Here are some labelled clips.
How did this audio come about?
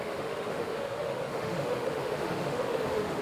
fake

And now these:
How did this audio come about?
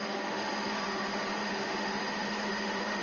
fake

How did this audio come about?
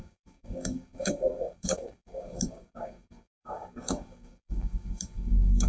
fake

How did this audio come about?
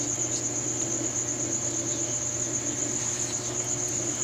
real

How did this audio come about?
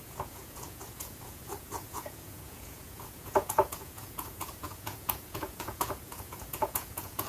fake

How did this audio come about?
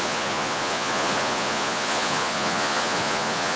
fake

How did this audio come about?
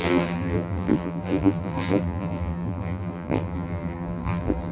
fake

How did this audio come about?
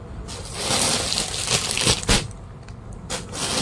real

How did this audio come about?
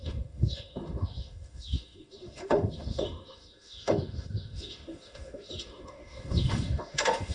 fake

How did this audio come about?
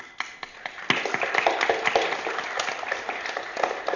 real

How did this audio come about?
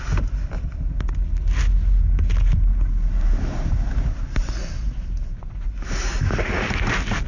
real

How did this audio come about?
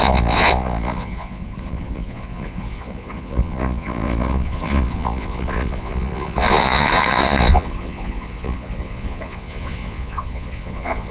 fake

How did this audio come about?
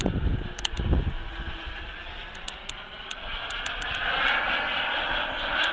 real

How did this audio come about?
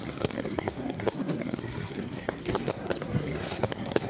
fake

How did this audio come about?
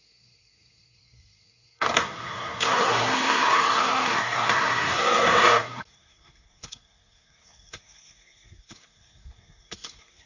fake